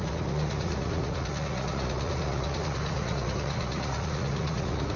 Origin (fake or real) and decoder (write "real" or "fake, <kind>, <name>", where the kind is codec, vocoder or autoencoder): fake, vocoder, Vocos